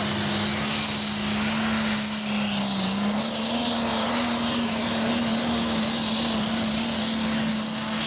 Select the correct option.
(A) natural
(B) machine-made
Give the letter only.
A